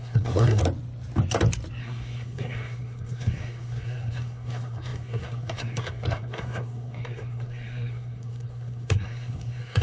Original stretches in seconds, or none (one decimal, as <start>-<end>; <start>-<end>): 0.6-1.8

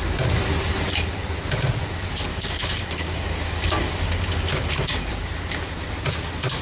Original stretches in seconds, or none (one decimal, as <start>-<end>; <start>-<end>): 0.0-2.3; 5.1-6.6

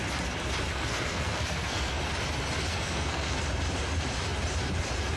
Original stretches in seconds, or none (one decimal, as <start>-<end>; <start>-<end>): 0.0-0.7; 2.0-2.7; 3.4-5.2

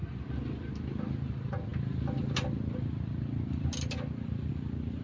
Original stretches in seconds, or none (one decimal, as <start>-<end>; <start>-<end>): 0.0-5.0

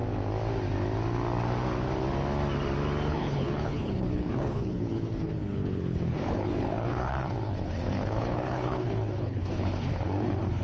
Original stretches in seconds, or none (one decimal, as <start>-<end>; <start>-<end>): 0.0-3.1

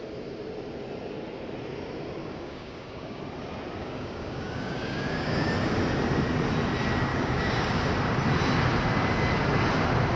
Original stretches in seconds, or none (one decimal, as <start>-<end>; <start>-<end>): 0.0-2.2; 3.2-3.8; 5.5-7.1; 7.8-10.2

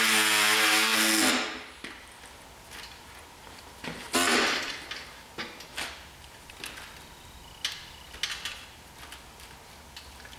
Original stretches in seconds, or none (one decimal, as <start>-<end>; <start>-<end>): 0.0-10.4

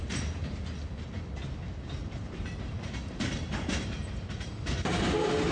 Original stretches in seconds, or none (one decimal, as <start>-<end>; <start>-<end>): 0.0-2.0; 4.5-5.5